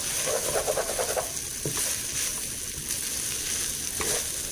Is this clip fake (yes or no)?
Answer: no